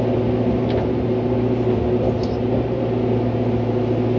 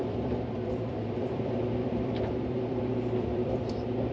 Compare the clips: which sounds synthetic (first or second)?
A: second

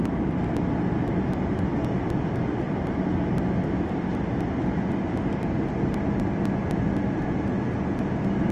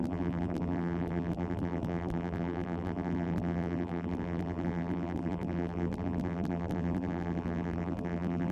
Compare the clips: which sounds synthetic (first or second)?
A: second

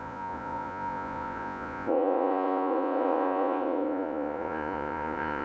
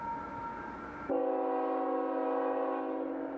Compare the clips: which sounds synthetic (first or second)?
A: first